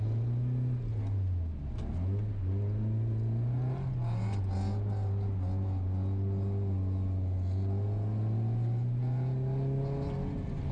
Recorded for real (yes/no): yes